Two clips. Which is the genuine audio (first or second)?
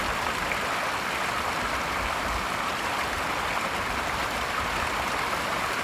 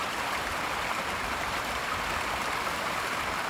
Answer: first